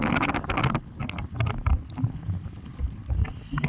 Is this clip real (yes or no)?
yes